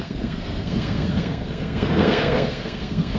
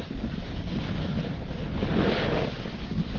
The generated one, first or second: first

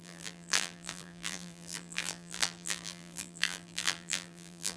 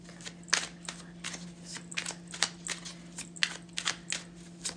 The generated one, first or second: first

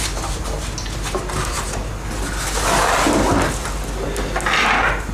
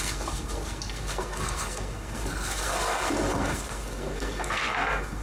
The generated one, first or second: second